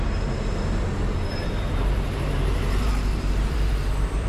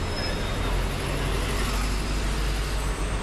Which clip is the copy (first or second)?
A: first